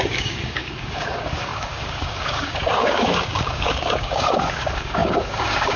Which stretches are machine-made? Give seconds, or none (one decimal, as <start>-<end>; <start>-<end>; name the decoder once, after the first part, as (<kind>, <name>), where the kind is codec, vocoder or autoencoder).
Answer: 0.0-5.8 (codec, DAC)